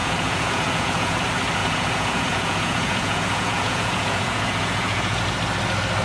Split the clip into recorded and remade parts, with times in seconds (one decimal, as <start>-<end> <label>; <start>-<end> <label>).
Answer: 0.0-1.2 remade; 1.2-1.6 recorded; 1.6-5.2 remade; 5.2-6.0 recorded